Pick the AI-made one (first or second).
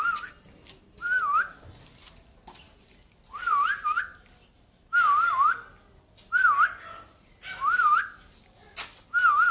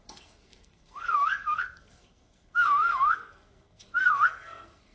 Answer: second